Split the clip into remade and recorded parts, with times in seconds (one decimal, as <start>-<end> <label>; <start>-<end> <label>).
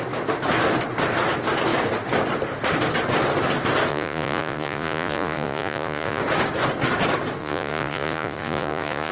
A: 0.0-3.9 recorded; 3.9-6.2 remade; 6.2-7.4 recorded; 7.4-9.1 remade